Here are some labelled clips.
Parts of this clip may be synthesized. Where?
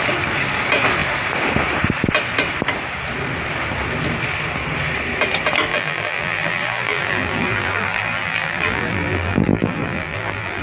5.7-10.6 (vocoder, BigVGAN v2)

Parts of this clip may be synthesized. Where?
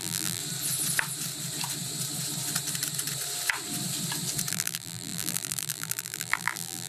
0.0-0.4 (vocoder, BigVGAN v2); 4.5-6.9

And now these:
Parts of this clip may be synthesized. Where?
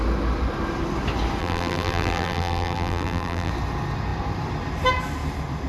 1.4-3.5 (vocoder, BigVGAN v2)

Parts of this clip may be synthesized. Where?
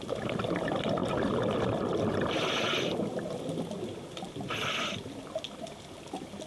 none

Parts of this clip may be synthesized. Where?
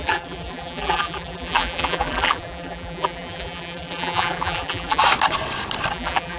0.0-5.0 (vocoder, BigVGAN v2); 5.9-6.4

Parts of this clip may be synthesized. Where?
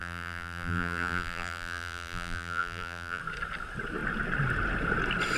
0.0-3.2 (vocoder, BigVGAN v2)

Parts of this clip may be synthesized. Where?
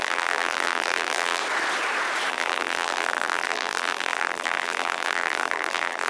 0.0-1.4 (vocoder, BigVGAN v2); 2.3-6.1